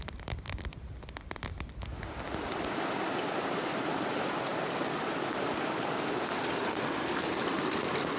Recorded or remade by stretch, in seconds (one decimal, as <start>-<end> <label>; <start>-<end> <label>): 0.0-8.2 recorded